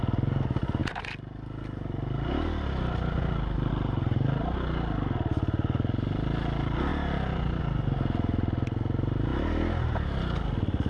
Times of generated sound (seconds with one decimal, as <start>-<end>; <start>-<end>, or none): none